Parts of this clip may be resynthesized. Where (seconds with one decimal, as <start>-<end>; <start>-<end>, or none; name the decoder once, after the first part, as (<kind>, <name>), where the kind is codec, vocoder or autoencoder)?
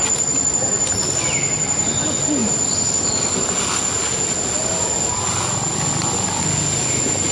none